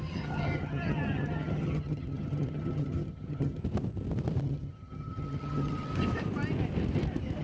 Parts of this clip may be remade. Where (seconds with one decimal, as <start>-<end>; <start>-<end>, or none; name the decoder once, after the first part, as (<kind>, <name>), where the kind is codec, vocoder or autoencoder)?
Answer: 0.0-3.6 (vocoder, HiFi-GAN); 4.4-5.9